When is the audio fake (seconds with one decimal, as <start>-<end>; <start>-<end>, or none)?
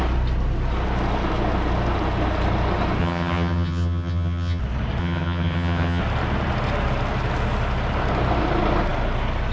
3.0-4.6; 5.0-6.0